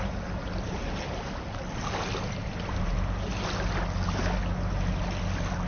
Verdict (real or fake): real